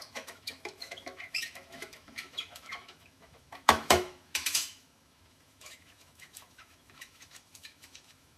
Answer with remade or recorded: remade